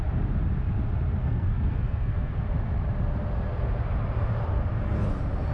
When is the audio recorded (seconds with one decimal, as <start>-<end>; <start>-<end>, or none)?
0.0-1.2; 2.4-5.5